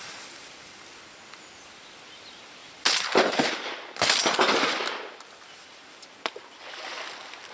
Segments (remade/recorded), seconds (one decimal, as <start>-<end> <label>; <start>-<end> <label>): 0.0-7.5 recorded